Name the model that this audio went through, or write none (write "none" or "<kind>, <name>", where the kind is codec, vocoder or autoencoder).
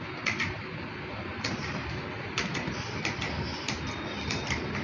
none